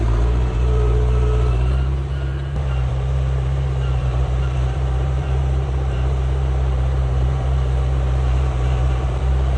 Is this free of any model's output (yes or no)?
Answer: no